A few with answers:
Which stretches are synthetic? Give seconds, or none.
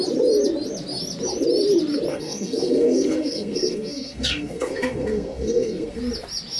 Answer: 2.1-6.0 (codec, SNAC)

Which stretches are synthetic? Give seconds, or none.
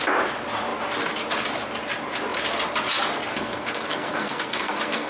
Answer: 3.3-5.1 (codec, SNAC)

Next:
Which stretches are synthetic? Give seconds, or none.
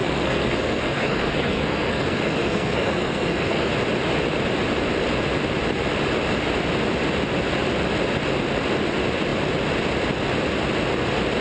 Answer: 0.0-3.7 (codec, SNAC)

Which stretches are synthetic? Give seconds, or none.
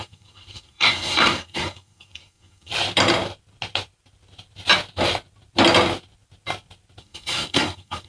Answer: 0.0-2.7 (codec, SNAC); 7.0-8.1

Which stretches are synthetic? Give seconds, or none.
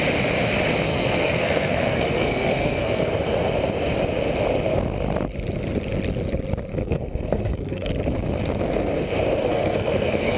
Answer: 0.9-3.1 (codec, SNAC); 6.7-7.9; 9.5-10.4